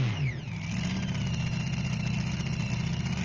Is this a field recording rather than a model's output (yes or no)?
yes